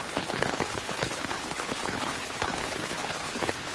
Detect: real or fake fake